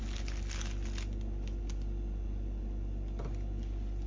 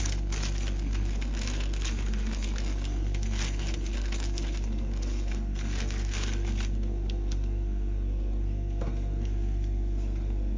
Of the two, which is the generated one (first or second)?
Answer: second